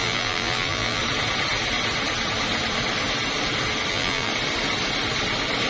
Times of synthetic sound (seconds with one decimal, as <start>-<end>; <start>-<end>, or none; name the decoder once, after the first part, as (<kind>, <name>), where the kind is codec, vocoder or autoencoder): 0.0-1.0 (vocoder, BigVGAN v2); 3.9-4.3